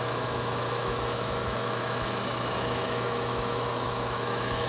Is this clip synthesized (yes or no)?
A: yes